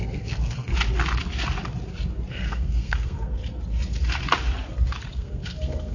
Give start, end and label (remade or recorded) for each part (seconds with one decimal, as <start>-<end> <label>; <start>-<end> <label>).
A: 0.0-0.7 remade; 0.7-2.3 recorded; 2.3-3.4 remade; 3.4-5.1 recorded; 5.1-5.9 remade